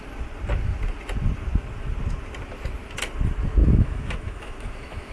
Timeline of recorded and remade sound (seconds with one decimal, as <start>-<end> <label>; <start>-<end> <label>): 0.0-3.6 recorded; 3.6-5.1 remade